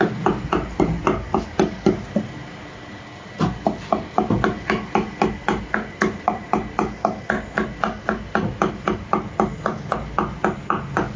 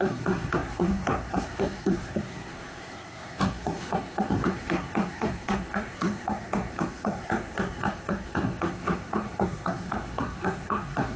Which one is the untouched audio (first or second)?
first